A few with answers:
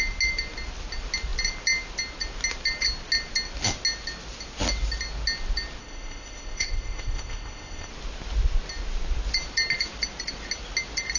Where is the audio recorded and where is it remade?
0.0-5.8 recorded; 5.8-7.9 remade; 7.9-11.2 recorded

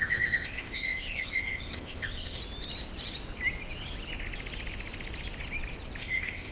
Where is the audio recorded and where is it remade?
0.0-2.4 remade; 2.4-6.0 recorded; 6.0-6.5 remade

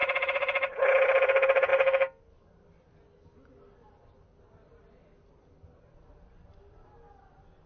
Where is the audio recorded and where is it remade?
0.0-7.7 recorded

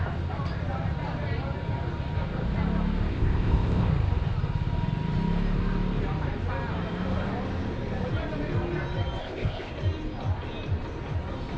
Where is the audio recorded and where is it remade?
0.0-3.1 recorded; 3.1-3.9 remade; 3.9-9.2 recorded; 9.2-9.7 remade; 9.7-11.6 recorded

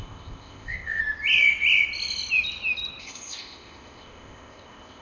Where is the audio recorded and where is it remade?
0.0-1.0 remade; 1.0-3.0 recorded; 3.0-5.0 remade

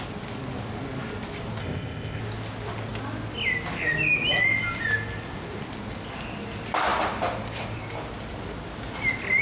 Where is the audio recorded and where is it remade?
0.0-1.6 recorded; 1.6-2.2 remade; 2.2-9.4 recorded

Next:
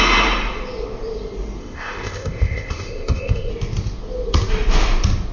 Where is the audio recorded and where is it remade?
0.0-1.6 recorded; 1.6-3.5 remade; 3.5-5.3 recorded